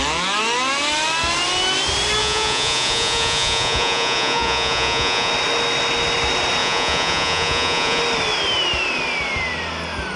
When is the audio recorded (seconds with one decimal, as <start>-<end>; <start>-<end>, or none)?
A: 0.0-2.2; 5.3-6.6; 8.0-10.2

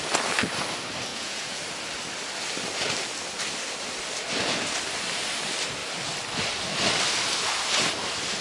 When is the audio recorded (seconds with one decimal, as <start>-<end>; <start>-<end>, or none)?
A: 0.0-1.1; 1.6-8.4

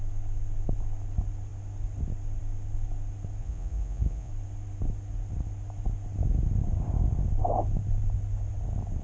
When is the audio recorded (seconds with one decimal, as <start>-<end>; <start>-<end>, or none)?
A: 0.0-3.4; 4.3-9.0